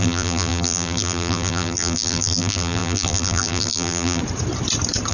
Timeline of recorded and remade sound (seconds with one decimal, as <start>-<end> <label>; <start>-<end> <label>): 0.0-4.2 remade; 4.2-5.1 recorded